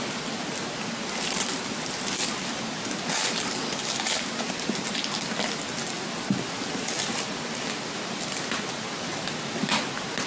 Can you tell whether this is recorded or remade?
recorded